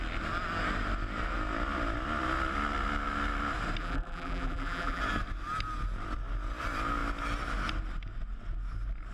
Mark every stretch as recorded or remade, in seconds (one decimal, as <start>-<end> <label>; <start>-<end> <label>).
0.0-3.8 recorded; 3.8-5.0 remade; 5.0-9.1 recorded